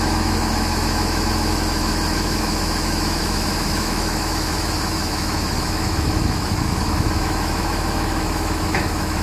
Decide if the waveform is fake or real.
fake